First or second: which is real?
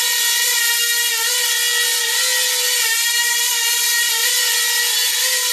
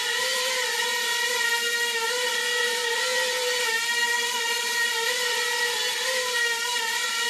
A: first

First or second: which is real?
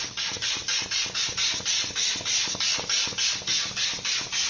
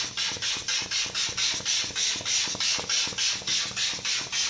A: second